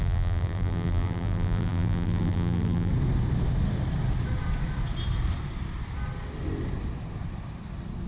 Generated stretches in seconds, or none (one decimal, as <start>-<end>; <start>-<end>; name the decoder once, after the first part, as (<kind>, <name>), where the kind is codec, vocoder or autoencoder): 0.0-2.9 (vocoder, BigVGAN v2)

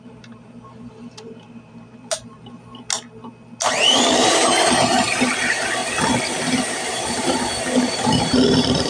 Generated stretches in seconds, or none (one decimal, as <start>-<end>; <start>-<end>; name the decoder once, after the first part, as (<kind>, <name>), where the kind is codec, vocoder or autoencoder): 0.0-2.7 (vocoder, BigVGAN v2); 3.7-5.8; 6.7-8.9

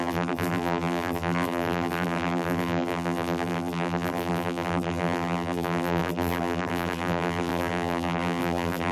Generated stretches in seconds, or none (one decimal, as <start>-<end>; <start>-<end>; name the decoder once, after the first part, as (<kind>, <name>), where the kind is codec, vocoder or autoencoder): 0.0-8.9 (vocoder, BigVGAN v2)

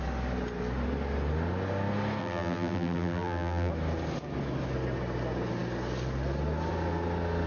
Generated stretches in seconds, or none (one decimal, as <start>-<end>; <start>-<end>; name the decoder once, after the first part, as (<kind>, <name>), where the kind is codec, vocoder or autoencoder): 2.2-3.7 (vocoder, BigVGAN v2)

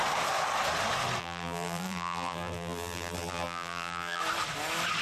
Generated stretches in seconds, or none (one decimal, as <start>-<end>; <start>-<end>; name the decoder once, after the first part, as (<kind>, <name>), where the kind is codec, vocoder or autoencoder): 1.2-4.2 (vocoder, BigVGAN v2)